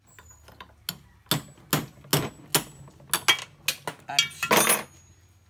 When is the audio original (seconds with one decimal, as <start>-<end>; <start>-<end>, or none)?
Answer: 0.0-5.5